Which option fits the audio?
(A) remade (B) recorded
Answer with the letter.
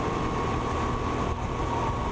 B